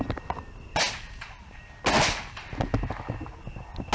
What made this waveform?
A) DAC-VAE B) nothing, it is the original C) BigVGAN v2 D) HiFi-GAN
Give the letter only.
B